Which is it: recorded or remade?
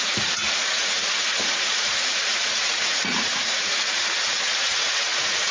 remade